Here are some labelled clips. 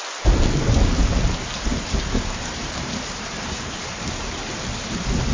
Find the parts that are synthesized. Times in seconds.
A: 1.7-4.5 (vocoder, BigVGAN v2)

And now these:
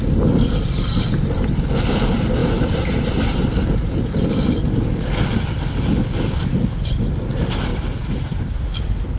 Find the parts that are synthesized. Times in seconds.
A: 2.4-4.6 (vocoder, BigVGAN v2); 7.7-8.4

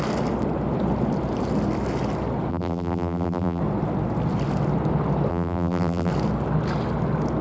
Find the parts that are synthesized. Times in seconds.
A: 2.5-3.6 (vocoder, BigVGAN v2); 5.3-6.1

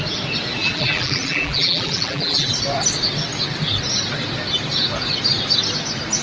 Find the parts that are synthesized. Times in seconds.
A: 0.6-2.5 (vocoder, BigVGAN v2)

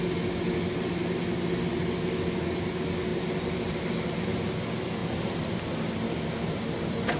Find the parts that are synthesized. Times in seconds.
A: 3.1-4.4 (vocoder, BigVGAN v2)

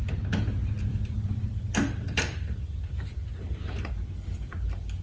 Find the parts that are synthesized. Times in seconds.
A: 0.9-3.9 (vocoder, BigVGAN v2)

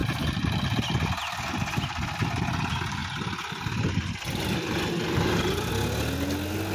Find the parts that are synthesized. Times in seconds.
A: 0.0-1.2 (vocoder, BigVGAN v2); 3.0-5.7